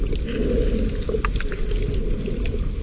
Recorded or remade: recorded